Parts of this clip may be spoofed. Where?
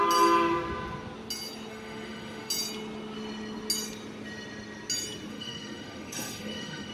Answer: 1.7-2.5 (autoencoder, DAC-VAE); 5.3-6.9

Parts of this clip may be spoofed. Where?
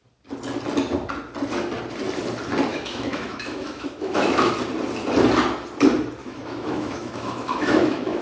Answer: 2.7-4.5 (autoencoder, DAC-VAE); 6.2-8.2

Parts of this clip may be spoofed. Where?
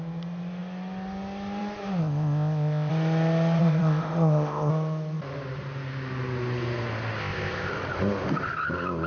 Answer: 2.0-2.9 (codec, ZipCodec); 3.6-4.7; 7.2-7.7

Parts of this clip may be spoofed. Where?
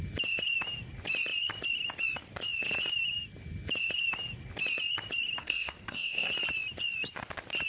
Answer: 5.4-6.3 (codec, SNAC)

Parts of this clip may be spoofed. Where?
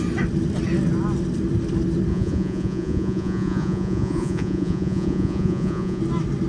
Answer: 2.1-6.0 (vocoder, Vocos)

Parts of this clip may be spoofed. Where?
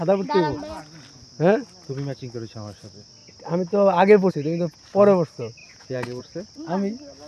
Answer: 5.6-6.2 (vocoder, Vocos)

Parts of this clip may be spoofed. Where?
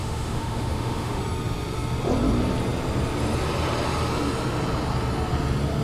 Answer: 0.0-1.2 (autoencoder, DAC-VAE)